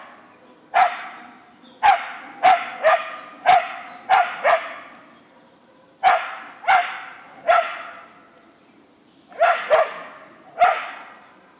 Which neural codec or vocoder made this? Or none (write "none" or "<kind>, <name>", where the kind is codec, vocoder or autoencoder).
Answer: none